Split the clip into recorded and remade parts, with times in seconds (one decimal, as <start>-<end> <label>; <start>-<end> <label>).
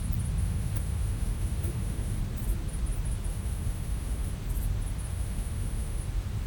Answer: 0.0-0.4 recorded; 0.4-2.2 remade; 2.2-3.3 recorded; 3.3-4.3 remade; 4.3-5.1 recorded; 5.1-6.0 remade; 6.0-6.5 recorded